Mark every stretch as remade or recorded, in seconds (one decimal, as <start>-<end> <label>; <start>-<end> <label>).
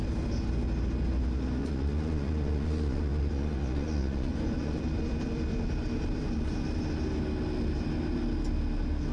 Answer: 0.0-1.6 recorded; 1.6-4.8 remade; 4.8-9.1 recorded